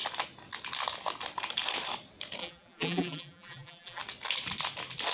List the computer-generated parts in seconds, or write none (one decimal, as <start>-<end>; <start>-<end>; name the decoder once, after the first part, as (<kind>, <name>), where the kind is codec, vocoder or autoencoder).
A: 2.4-4.0 (vocoder, BigVGAN v2)